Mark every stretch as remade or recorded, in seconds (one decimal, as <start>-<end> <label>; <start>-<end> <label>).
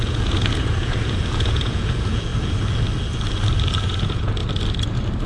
0.0-2.3 remade; 2.3-3.8 recorded; 3.8-4.4 remade; 4.4-5.3 recorded